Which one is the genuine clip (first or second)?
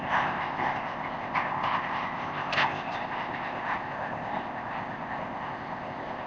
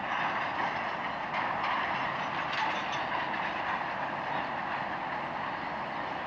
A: second